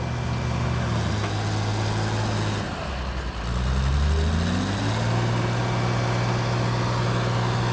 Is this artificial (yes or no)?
no